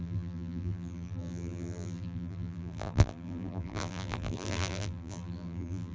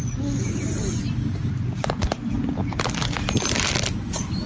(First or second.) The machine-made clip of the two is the first